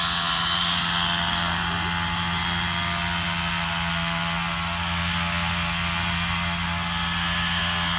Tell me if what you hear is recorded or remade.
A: recorded